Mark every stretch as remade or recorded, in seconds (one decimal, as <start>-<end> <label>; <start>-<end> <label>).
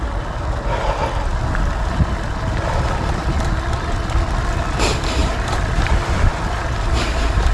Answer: 0.0-5.2 recorded; 5.2-7.5 remade